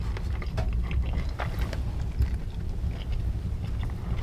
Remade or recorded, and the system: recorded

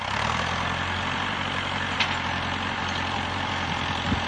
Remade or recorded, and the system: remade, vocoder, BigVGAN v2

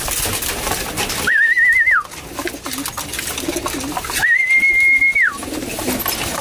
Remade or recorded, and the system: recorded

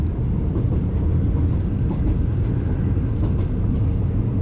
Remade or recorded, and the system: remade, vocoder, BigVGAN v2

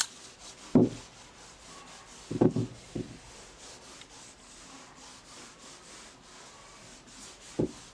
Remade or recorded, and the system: recorded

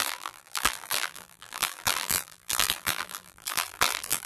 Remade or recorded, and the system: remade, vocoder, BigVGAN v2